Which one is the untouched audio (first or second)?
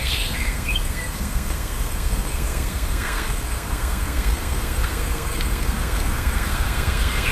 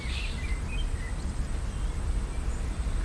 second